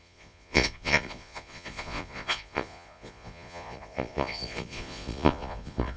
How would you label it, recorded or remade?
remade